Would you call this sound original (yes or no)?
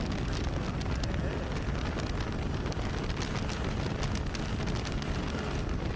yes